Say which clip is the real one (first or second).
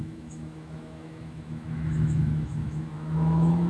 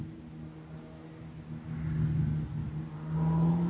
second